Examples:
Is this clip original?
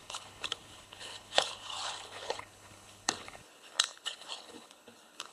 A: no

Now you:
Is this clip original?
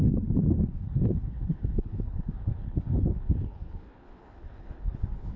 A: no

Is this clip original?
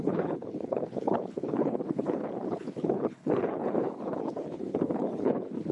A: no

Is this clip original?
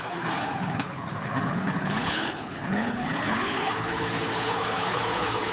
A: no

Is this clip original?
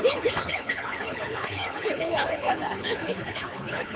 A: no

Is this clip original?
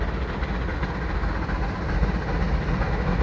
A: yes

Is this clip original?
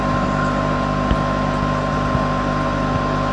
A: yes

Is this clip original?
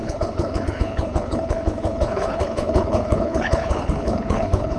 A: no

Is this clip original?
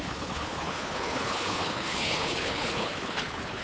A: no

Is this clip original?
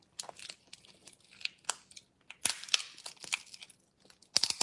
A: yes